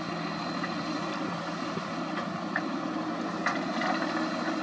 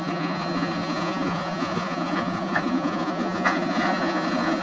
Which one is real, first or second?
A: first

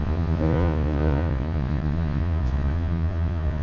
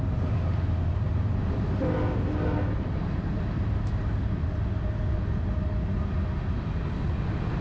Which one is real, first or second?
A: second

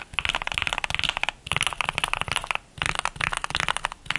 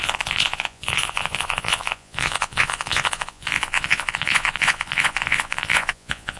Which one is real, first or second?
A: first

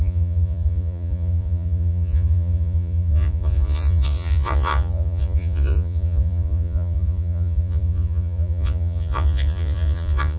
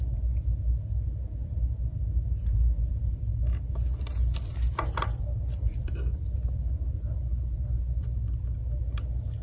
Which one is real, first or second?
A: second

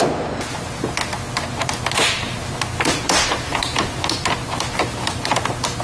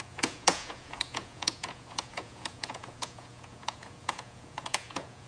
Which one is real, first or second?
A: first